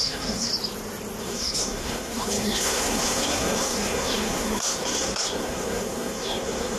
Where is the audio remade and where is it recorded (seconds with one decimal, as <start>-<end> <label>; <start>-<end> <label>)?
0.0-0.5 remade; 0.5-1.2 recorded; 1.2-6.8 remade